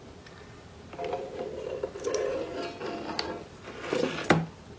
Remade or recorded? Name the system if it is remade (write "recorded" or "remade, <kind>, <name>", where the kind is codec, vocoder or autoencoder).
recorded